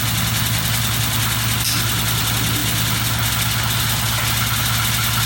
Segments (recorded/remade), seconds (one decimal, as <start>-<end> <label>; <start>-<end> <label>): 0.0-5.3 recorded

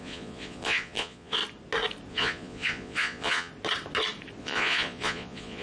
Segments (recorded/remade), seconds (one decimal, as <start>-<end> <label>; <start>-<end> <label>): 0.0-1.4 remade; 1.4-2.1 recorded; 2.1-3.5 remade; 3.5-4.4 recorded; 4.4-5.6 remade